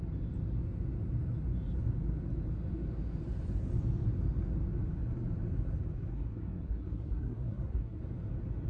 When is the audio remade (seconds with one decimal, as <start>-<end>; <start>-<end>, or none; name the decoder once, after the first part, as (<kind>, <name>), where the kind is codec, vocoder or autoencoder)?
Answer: 6.1-8.0 (codec, SNAC)